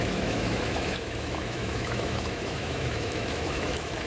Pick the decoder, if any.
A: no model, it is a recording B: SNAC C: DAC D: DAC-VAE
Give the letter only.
D